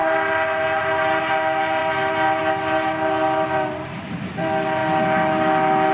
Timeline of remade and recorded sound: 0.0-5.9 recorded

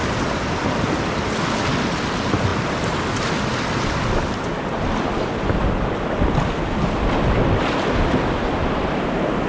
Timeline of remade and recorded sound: 0.0-9.5 recorded